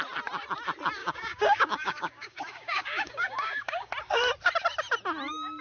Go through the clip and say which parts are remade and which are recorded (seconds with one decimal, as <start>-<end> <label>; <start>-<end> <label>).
0.0-1.0 recorded; 1.0-3.9 remade; 3.9-5.6 recorded

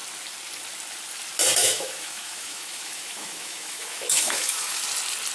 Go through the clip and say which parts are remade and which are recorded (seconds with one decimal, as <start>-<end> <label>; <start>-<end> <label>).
0.0-1.6 recorded; 1.6-4.8 remade; 4.8-5.3 recorded

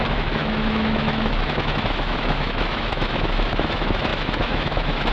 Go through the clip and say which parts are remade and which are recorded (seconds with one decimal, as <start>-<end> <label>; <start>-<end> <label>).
0.0-5.1 remade

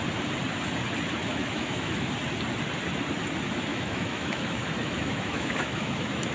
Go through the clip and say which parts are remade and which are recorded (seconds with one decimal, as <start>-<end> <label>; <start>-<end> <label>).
0.0-1.2 recorded; 1.2-2.1 remade; 2.1-3.7 recorded; 3.7-6.3 remade

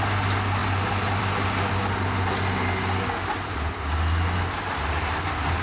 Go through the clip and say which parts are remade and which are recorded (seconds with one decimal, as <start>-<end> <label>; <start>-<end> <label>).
0.0-0.6 recorded; 0.6-1.2 remade; 1.2-5.6 recorded